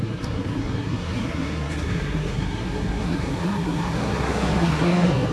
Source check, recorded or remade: remade